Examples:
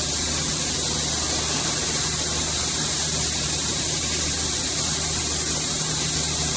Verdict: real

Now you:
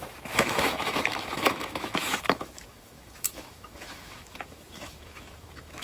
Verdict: fake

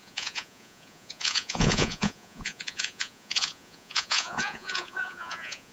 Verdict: fake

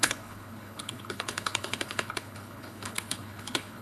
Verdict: fake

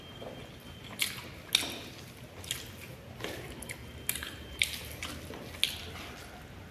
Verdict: real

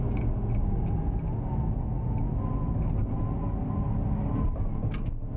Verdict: real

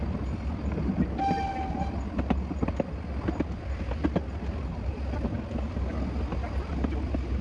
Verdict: real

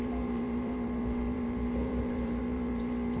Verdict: fake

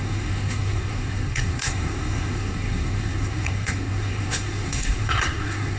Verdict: fake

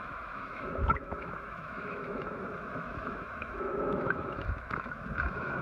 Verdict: fake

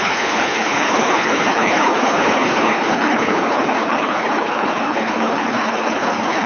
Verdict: fake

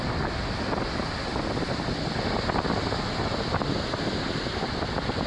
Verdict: real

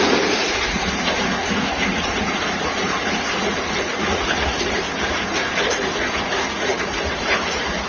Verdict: fake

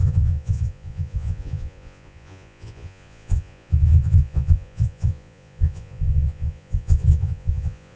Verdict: fake